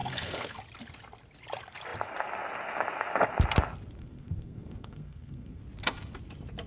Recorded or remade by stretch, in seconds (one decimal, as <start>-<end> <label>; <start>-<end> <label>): 0.0-0.6 remade; 0.6-4.0 recorded; 4.0-5.6 remade; 5.6-6.7 recorded